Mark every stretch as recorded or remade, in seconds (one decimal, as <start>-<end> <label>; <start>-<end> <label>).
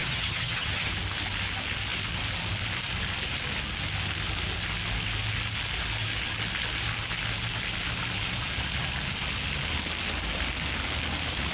0.0-0.9 remade; 0.9-11.5 recorded